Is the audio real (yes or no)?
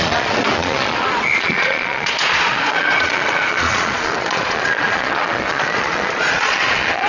no